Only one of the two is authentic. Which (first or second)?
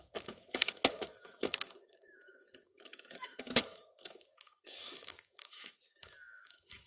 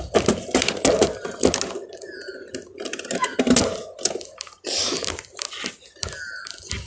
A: second